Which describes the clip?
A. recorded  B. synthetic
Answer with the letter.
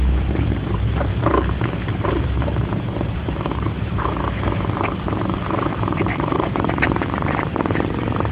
B